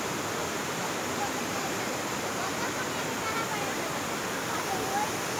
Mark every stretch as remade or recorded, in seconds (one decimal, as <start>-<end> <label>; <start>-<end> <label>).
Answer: 0.0-0.8 recorded; 0.8-2.9 remade; 2.9-5.4 recorded